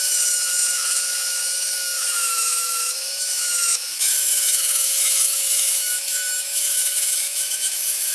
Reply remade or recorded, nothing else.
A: remade